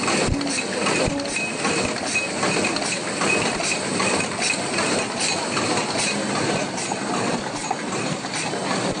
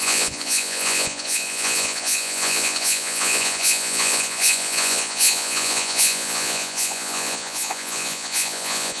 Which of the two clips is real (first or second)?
first